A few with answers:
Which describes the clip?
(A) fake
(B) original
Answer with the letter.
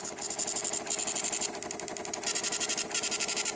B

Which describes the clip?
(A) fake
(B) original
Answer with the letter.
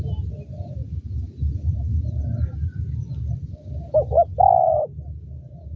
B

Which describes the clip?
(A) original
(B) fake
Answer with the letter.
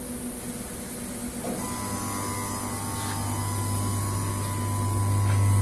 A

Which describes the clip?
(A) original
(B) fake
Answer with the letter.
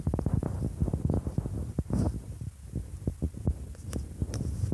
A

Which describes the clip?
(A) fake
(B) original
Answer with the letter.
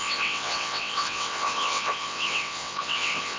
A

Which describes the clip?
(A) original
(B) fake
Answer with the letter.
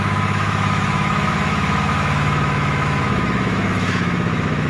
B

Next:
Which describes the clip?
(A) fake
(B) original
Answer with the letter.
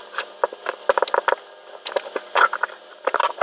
B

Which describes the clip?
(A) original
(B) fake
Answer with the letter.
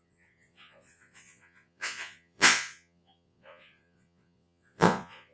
B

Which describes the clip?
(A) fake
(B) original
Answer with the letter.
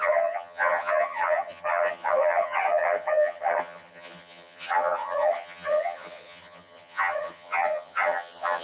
A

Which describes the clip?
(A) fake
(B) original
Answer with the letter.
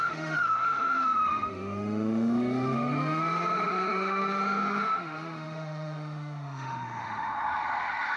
A